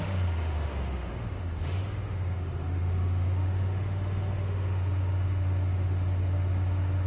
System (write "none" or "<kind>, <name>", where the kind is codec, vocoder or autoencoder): autoencoder, DAC-VAE